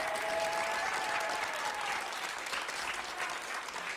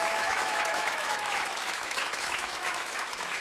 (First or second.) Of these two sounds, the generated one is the second